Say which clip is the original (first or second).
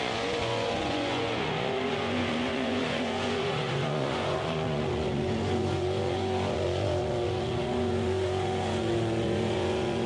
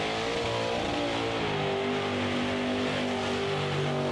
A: second